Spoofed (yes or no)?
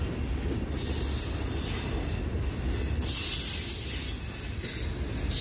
no